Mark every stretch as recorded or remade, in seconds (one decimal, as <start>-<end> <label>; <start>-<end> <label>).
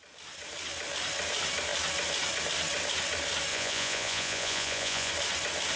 0.0-3.5 recorded; 3.5-5.1 remade; 5.1-5.8 recorded